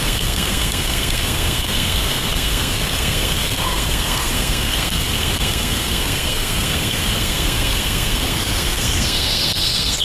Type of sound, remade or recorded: remade